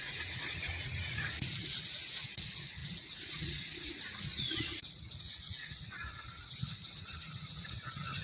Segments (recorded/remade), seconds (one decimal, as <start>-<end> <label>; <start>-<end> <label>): 0.0-8.2 remade